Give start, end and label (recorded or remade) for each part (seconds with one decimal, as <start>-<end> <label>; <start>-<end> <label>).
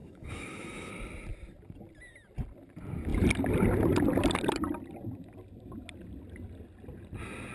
0.0-0.9 remade; 0.9-7.5 recorded